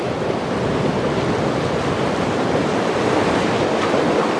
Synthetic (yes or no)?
yes